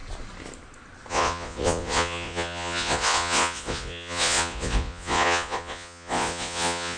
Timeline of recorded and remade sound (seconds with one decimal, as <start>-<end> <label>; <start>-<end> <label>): 0.0-1.1 recorded; 1.1-7.0 remade